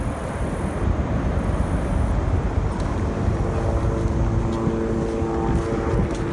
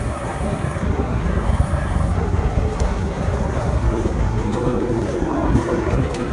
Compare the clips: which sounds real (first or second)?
first